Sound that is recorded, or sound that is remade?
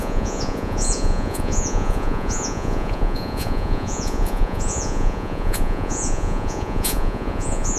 remade